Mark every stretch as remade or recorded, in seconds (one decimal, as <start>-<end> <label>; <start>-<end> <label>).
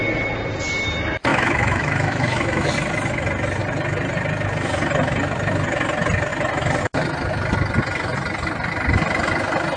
0.0-1.3 recorded; 1.3-2.7 remade; 2.7-9.8 recorded